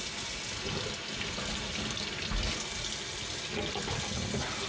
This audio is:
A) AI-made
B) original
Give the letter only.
B